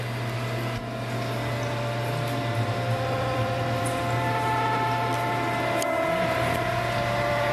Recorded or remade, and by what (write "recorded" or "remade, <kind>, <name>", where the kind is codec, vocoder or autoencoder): recorded